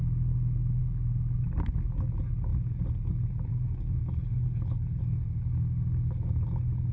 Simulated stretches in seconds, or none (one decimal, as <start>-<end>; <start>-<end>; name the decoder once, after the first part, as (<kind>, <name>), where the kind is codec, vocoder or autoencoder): 4.0-5.0 (codec, HILCodec)